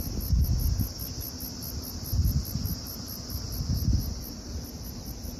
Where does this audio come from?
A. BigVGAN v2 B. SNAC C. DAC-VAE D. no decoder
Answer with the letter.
D